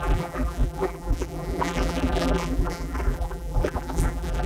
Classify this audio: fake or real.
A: fake